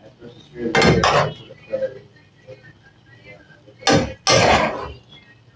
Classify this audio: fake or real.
real